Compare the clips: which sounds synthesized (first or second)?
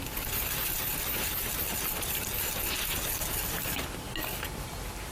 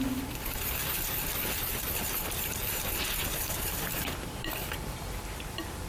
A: second